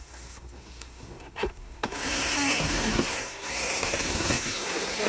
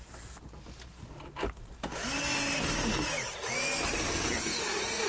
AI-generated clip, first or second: first